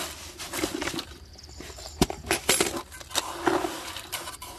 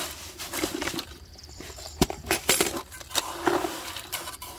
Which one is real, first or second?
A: first